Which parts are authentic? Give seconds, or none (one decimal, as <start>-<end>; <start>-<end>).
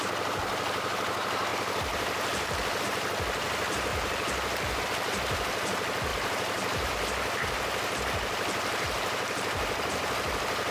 0.0-6.1; 6.9-10.7